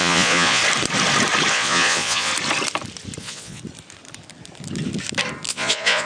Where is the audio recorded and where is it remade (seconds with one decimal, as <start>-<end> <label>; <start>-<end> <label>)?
0.0-0.6 remade; 0.6-1.5 recorded; 1.5-2.3 remade; 2.3-3.2 recorded; 3.2-3.6 remade; 3.6-5.5 recorded; 5.5-6.1 remade